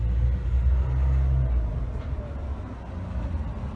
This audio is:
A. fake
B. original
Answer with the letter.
B